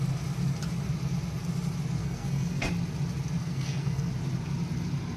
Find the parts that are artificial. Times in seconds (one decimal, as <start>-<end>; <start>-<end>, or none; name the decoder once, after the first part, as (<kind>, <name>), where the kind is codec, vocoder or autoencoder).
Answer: 2.0-2.7 (codec, SNAC); 3.4-4.1